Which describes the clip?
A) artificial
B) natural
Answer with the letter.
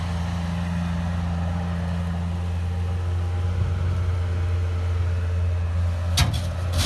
B